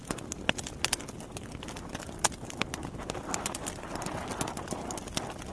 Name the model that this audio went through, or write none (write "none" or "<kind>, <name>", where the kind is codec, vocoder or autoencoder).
none